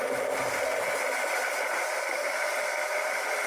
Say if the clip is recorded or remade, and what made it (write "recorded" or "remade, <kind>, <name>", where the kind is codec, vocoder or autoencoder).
recorded